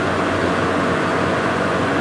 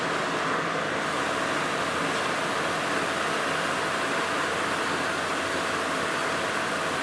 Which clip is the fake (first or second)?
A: first